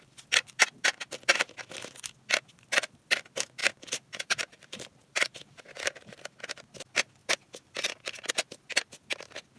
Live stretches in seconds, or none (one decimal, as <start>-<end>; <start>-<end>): 0.0-3.6; 6.2-9.6